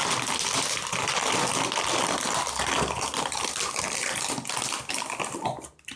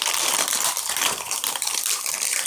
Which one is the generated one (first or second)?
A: second